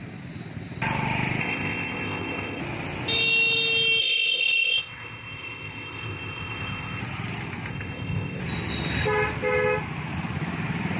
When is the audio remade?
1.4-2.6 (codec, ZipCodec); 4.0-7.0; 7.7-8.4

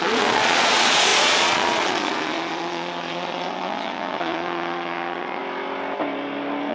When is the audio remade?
0.0-5.4 (vocoder, Vocos)

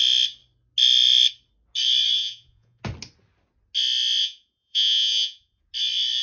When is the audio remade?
2.2-2.8 (vocoder, Vocos); 4.2-5.6

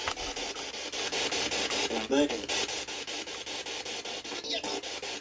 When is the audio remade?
none

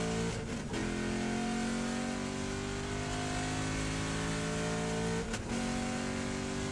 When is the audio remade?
none

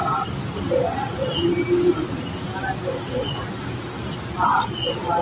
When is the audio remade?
none

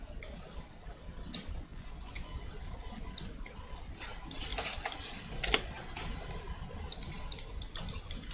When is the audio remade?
1.7-2.4 (vocoder, Vocos)

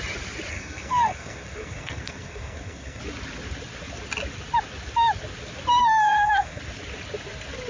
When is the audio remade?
0.5-3.0 (codec, SNAC); 5.8-6.6